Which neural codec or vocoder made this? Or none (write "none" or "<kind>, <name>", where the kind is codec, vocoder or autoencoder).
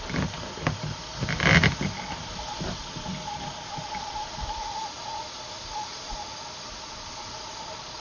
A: none